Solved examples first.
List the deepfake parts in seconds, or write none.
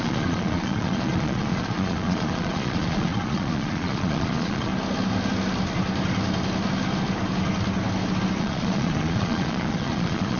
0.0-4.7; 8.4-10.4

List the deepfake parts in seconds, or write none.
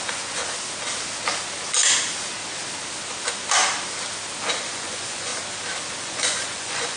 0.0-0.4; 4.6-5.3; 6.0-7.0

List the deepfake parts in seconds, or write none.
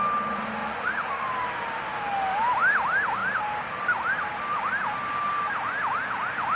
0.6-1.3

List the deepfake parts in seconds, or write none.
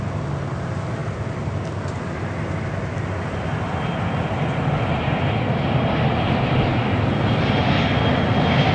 none